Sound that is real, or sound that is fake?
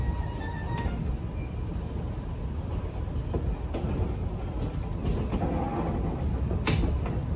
real